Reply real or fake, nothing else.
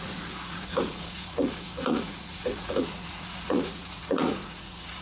fake